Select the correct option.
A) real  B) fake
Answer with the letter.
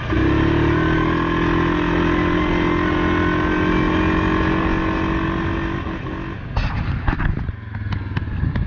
A